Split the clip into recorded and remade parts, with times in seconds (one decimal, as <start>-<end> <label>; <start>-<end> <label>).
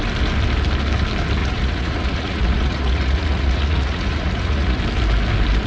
0.0-1.4 recorded; 1.4-4.8 remade; 4.8-5.7 recorded